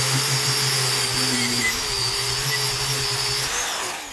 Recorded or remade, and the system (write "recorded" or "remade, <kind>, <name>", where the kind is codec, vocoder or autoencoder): recorded